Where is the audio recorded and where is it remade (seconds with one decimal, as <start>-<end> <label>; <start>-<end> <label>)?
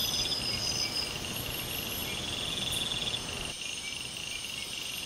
0.0-5.1 recorded